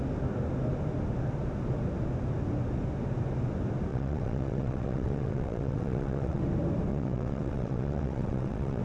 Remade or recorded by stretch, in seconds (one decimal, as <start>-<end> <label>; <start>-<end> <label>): 0.0-3.9 recorded; 3.9-6.4 remade; 6.4-6.9 recorded; 6.9-8.8 remade